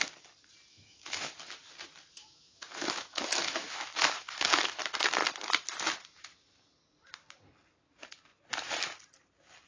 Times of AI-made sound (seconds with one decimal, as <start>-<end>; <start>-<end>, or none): 0.7-1.3; 2.2-4.8